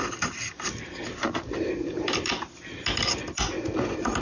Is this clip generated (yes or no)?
no